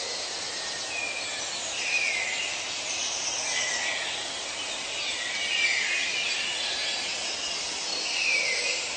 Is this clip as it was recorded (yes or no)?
yes